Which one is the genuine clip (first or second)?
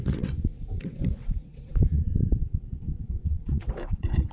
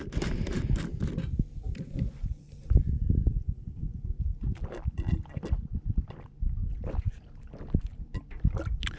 second